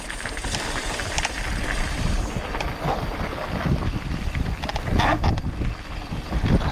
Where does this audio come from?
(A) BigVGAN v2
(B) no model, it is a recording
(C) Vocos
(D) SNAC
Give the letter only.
A